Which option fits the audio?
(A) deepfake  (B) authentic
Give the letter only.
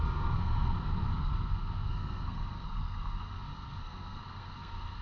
A